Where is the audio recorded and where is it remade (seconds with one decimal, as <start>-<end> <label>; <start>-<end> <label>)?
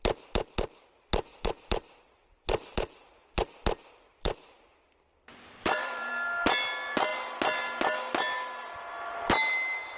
0.0-1.3 recorded; 1.3-3.4 remade; 3.4-4.1 recorded; 4.1-4.7 remade; 4.7-5.3 recorded; 5.3-6.1 remade; 6.1-10.0 recorded